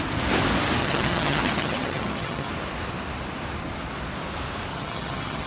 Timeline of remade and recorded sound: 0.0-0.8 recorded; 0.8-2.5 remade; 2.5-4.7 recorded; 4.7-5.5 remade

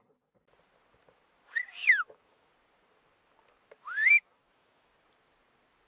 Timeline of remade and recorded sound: 0.0-1.8 recorded; 1.8-2.5 remade; 2.5-4.1 recorded; 4.1-4.9 remade; 4.9-5.9 recorded

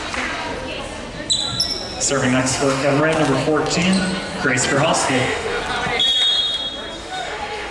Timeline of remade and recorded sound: 0.0-2.4 recorded; 2.4-3.0 remade; 3.0-5.0 recorded; 5.0-5.6 remade; 5.6-7.0 recorded; 7.0-7.7 remade

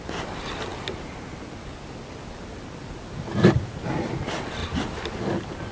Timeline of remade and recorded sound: 0.0-4.6 recorded; 4.6-5.7 remade

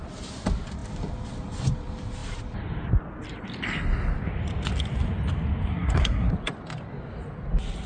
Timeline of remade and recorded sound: 0.0-5.7 recorded; 5.7-6.3 remade; 6.3-7.9 recorded

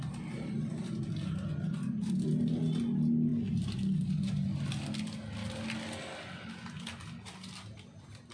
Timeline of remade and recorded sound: 0.0-8.3 recorded

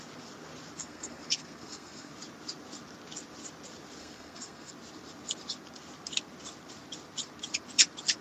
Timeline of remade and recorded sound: 0.0-0.8 recorded; 0.8-2.1 remade; 2.1-4.0 recorded; 4.0-4.7 remade; 4.7-8.2 recorded